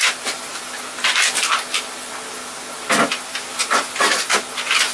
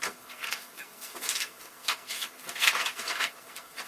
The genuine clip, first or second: first